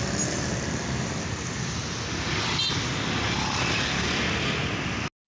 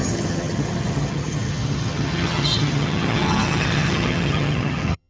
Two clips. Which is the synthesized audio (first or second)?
second